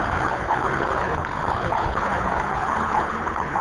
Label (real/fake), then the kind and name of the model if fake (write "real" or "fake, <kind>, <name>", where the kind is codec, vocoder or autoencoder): fake, codec, HILCodec